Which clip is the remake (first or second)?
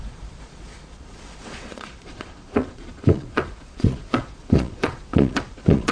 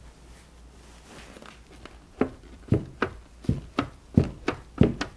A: first